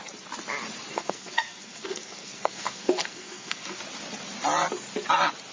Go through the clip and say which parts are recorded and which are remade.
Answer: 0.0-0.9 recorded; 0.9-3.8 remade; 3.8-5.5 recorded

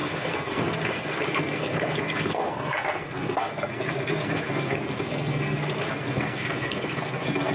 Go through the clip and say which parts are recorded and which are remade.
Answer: 0.0-7.5 remade

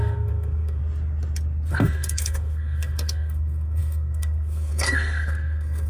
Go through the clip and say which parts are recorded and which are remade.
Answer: 0.0-0.8 remade; 0.8-1.7 recorded; 1.7-5.9 remade

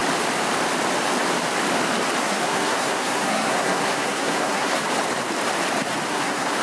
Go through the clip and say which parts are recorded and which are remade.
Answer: 0.0-2.2 recorded; 2.2-4.8 remade; 4.8-6.1 recorded; 6.1-6.6 remade

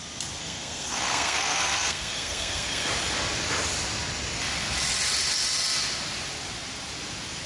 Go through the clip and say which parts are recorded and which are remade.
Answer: 0.0-0.4 recorded; 0.4-2.9 remade; 2.9-7.5 recorded

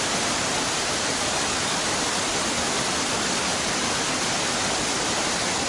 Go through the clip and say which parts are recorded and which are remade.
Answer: 0.0-5.7 recorded

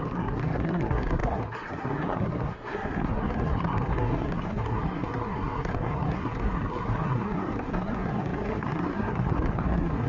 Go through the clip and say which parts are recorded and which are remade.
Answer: 0.0-10.1 remade